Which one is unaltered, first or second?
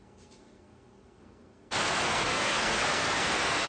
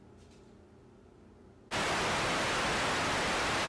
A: second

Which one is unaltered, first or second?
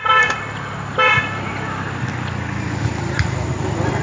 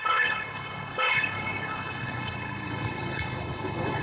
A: first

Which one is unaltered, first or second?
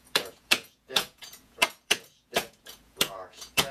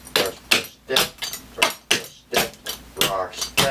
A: second